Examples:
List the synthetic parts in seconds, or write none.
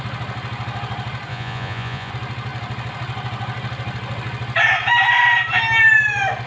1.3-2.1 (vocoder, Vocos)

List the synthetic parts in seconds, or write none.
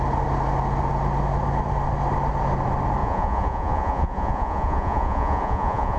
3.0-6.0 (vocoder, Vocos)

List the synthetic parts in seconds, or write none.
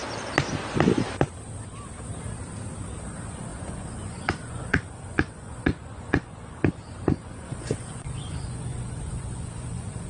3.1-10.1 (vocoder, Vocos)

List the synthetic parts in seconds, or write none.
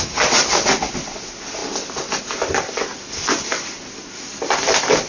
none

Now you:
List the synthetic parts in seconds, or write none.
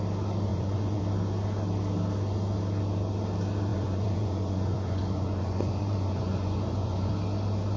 0.5-1.0 (vocoder, Vocos); 3.7-7.1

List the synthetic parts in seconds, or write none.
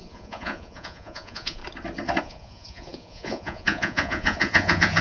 0.0-1.6 (vocoder, Vocos); 2.2-5.0